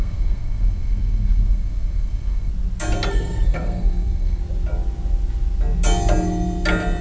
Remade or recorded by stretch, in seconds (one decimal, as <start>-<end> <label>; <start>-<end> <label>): 0.0-2.5 remade; 2.5-3.1 recorded; 3.1-4.4 remade; 4.4-7.0 recorded